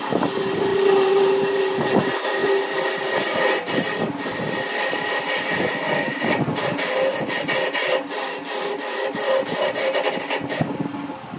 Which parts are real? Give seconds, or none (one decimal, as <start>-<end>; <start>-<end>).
0.0-0.7; 1.2-11.4